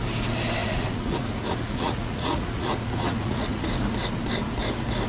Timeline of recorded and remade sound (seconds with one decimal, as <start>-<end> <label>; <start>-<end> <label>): 0.0-0.6 recorded; 0.6-3.7 remade; 3.7-5.1 recorded